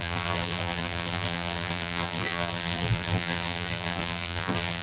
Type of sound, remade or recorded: remade